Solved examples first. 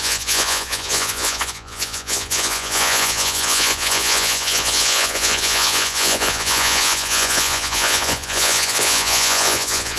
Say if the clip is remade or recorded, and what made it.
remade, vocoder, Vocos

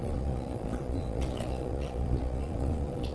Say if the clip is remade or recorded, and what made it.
remade, vocoder, Vocos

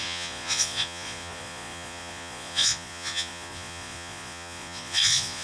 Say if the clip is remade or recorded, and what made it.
remade, vocoder, Vocos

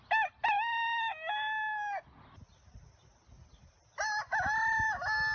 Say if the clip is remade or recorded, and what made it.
recorded